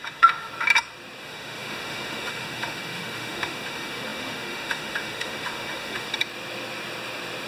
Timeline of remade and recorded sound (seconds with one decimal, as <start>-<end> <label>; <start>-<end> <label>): 0.0-0.5 remade; 0.5-1.2 recorded; 1.2-6.1 remade; 6.1-7.5 recorded